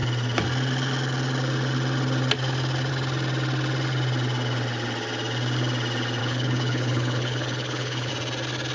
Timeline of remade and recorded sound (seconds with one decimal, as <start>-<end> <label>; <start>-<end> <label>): 0.0-6.2 recorded; 6.2-8.1 remade; 8.1-8.7 recorded